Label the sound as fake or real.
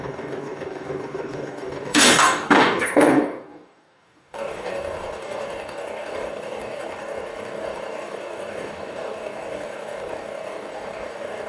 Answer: fake